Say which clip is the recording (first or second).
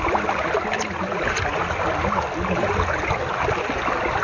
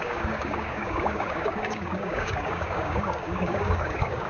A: first